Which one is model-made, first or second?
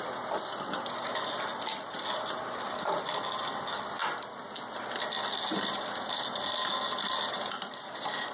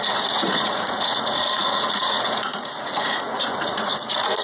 second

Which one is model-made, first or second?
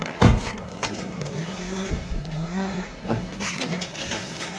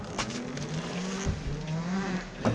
first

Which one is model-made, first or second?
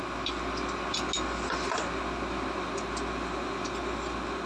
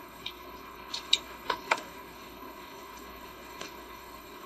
second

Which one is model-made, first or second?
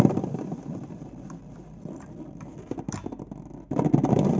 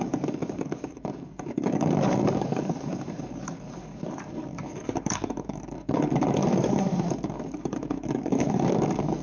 second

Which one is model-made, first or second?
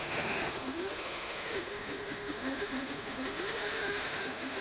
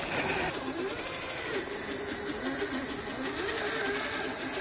first